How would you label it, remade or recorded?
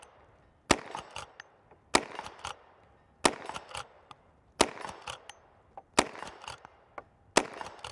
recorded